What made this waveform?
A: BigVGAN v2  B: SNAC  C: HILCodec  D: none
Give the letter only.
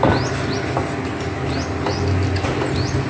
D